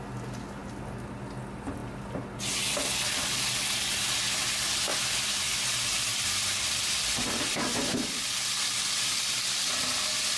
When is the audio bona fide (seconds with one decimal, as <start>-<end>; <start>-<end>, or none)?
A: 0.0-4.9; 5.4-6.1; 9.3-10.4